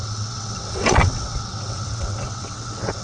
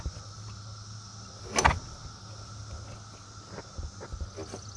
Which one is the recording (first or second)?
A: second